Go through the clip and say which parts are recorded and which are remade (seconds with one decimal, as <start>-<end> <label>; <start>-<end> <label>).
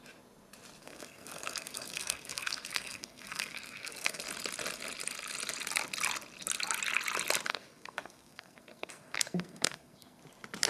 0.0-0.8 recorded; 0.8-4.2 remade; 4.2-7.5 recorded; 7.5-10.2 remade; 10.2-10.7 recorded